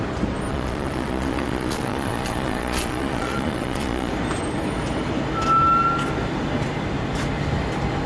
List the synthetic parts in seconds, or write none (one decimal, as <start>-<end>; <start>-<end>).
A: 0.5-4.1